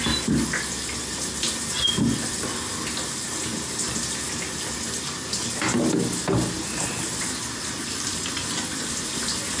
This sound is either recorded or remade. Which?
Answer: recorded